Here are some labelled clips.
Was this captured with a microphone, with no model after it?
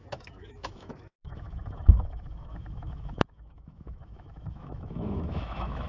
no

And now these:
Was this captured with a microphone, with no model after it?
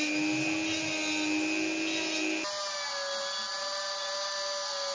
yes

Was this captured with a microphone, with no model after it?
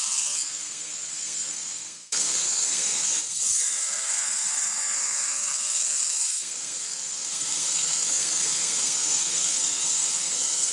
no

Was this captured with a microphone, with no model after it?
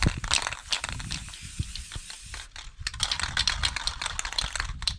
yes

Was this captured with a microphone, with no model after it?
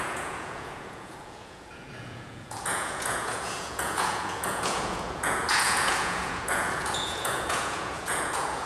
no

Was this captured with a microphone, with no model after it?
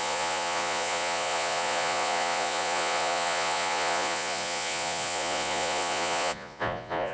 no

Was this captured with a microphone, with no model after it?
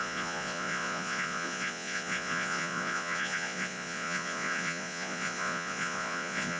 no